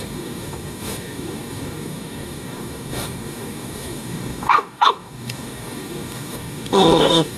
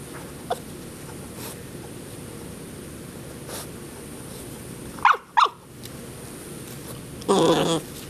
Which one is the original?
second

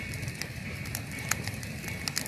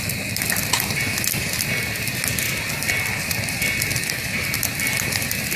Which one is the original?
second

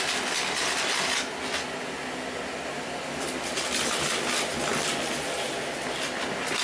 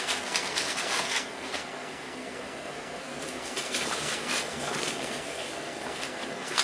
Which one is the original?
first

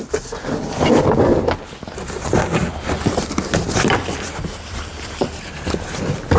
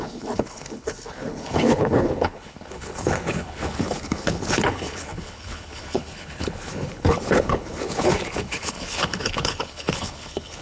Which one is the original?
first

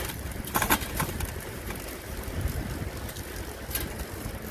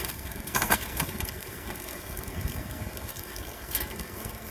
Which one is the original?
first